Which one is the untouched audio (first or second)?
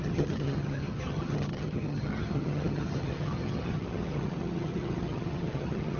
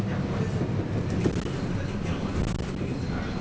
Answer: second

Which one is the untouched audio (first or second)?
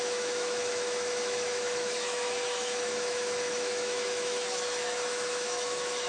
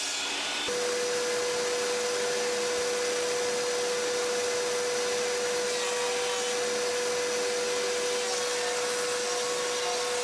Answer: second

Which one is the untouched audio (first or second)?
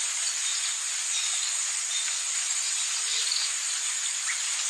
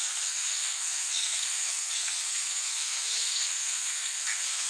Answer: first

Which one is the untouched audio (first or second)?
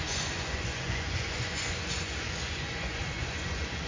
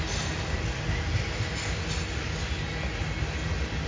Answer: second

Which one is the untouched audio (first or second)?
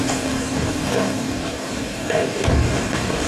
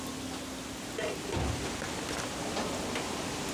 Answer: second